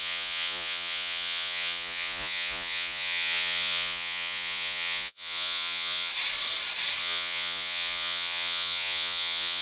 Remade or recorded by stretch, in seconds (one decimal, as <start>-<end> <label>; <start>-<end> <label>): 0.0-6.1 remade; 6.1-7.0 recorded; 7.0-9.6 remade